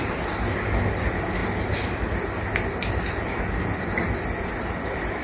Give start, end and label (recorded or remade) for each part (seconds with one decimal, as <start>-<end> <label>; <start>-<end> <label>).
0.0-5.2 recorded